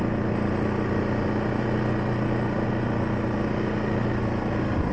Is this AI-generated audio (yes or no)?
no